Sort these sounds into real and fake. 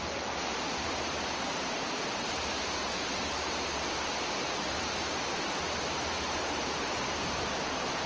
fake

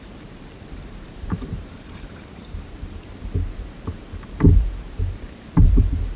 fake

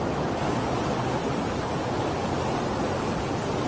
real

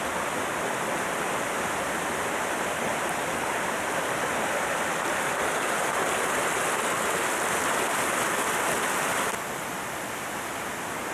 real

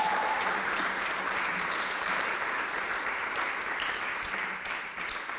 fake